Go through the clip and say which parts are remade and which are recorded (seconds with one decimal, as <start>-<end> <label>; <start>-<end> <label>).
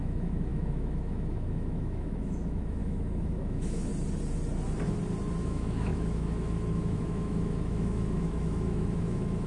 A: 0.0-3.9 remade; 3.9-5.4 recorded; 5.4-9.5 remade